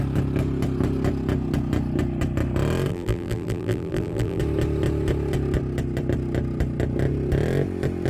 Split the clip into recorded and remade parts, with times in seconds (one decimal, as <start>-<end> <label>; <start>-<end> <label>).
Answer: 0.0-2.9 recorded; 2.9-4.4 remade; 4.4-8.1 recorded

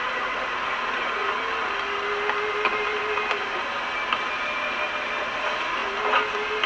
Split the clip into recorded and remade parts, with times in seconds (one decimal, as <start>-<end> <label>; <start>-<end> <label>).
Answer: 0.0-1.2 remade; 1.2-5.2 recorded; 5.2-5.8 remade; 5.8-6.7 recorded

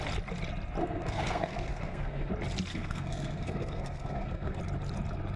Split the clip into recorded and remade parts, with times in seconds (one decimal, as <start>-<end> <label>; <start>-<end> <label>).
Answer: 0.0-0.8 recorded; 0.8-2.3 remade; 2.3-2.7 recorded; 2.7-4.6 remade; 4.6-5.4 recorded

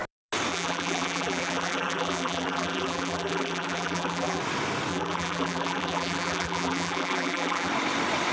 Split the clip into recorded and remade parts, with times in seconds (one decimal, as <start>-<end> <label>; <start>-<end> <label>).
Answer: 0.0-0.5 recorded; 0.5-4.4 remade; 4.4-4.9 recorded; 4.9-7.7 remade; 7.7-8.3 recorded

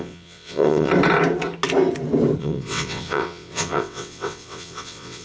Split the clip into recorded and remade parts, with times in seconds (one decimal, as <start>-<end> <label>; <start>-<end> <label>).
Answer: 0.0-0.9 remade; 0.9-2.4 recorded; 2.4-5.2 remade